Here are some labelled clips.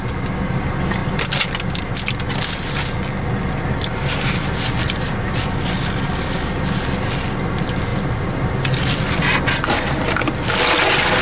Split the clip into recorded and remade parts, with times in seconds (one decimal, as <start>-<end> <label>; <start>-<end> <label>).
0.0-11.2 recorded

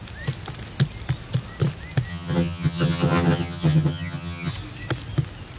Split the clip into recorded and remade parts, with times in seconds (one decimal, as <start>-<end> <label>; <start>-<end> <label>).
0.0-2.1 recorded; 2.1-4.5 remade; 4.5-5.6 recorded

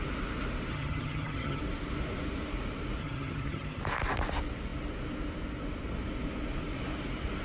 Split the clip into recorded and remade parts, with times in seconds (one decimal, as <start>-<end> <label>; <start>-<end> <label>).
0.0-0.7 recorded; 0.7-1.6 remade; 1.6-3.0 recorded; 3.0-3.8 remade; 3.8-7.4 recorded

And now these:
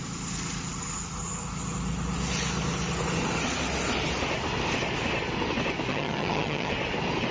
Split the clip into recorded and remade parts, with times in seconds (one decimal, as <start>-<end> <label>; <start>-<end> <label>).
0.0-5.9 recorded; 5.9-6.7 remade; 6.7-7.3 recorded

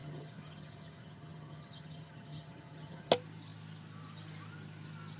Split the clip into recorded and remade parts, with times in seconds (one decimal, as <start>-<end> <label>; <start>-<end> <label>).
0.0-3.1 remade; 3.1-5.2 recorded

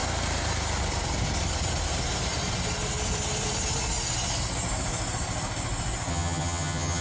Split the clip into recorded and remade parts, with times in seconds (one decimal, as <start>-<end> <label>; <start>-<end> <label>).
0.0-6.1 recorded; 6.1-7.0 remade

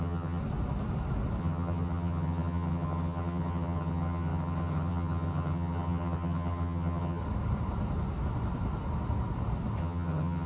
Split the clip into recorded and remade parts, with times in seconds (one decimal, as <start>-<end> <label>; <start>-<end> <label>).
0.0-0.4 remade; 0.4-1.4 recorded; 1.4-7.2 remade; 7.2-9.8 recorded; 9.8-10.5 remade